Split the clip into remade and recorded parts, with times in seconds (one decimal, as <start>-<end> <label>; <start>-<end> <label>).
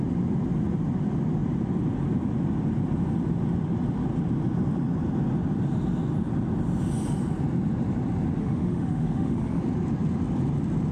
0.0-8.4 recorded; 8.4-9.6 remade; 9.6-10.9 recorded